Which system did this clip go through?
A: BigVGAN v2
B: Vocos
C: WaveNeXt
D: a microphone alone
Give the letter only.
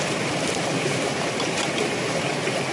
D